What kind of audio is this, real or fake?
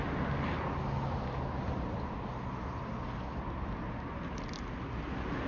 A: real